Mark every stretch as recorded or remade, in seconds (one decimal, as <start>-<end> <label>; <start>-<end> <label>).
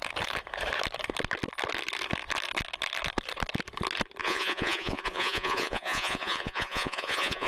0.0-4.2 recorded; 4.2-7.5 remade